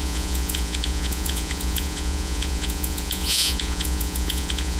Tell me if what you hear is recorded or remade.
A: remade